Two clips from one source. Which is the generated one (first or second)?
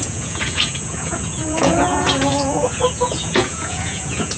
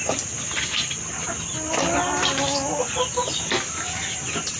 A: first